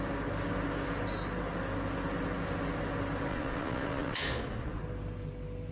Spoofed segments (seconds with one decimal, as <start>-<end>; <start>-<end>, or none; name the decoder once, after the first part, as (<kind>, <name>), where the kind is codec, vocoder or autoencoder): 3.3-4.8 (vocoder, Vocos)